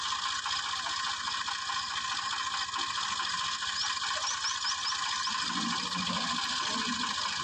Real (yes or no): yes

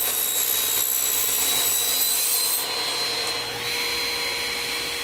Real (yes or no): yes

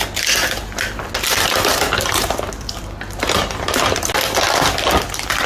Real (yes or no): yes